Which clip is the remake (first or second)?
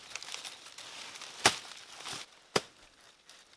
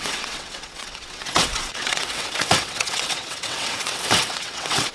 second